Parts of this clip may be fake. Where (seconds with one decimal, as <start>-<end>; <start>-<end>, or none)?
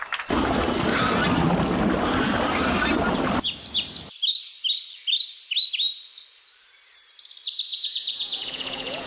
7.7-9.1